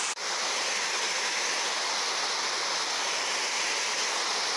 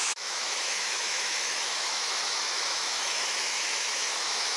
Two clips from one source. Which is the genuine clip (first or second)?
first